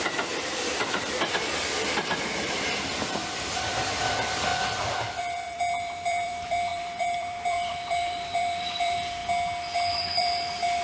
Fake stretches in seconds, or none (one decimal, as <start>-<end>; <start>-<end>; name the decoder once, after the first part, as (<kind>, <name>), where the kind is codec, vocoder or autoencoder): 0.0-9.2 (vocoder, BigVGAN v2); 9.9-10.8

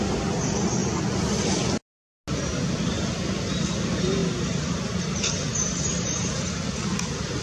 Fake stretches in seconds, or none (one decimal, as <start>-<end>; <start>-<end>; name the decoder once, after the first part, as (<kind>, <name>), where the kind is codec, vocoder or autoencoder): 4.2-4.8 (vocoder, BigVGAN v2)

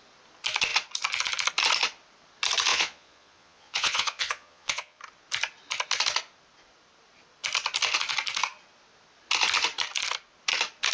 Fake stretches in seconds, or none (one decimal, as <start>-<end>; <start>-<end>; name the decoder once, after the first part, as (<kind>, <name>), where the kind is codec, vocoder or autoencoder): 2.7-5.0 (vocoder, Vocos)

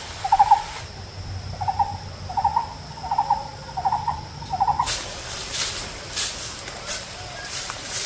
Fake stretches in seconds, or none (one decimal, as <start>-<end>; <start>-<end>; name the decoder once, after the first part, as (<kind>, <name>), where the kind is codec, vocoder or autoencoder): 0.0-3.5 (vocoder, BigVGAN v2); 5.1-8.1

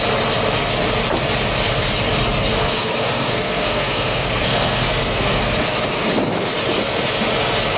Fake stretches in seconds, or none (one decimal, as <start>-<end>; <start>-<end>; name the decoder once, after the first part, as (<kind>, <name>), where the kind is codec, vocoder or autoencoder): 2.5-5.4 (codec, SNAC)

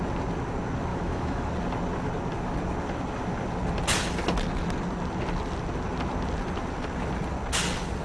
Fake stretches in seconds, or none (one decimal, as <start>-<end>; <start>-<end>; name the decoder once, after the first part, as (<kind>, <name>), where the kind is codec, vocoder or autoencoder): 0.9-1.5 (autoencoder, DAC-VAE)

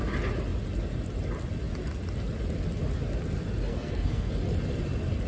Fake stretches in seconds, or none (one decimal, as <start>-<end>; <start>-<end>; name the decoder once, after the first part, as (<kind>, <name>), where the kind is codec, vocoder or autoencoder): 3.7-4.3 (codec, SNAC)

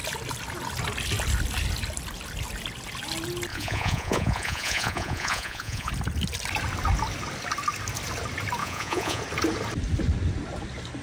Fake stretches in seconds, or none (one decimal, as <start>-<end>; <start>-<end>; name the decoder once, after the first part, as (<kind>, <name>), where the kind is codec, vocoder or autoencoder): 3.5-5.9 (vocoder, Vocos); 8.6-9.2